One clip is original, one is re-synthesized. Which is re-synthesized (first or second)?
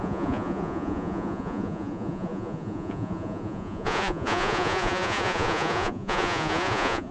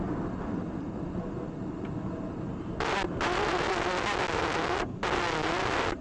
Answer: first